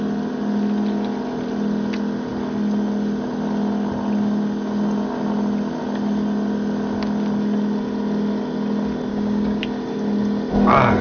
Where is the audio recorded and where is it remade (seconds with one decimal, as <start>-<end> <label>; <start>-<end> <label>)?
0.0-9.1 recorded; 9.1-9.6 remade; 9.6-11.0 recorded